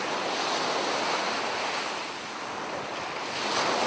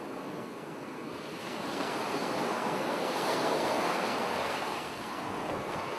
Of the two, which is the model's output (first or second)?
second